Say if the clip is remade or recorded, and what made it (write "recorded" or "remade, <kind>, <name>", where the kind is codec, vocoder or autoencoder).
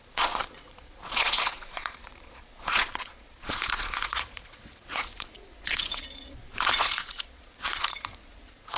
remade, vocoder, Vocos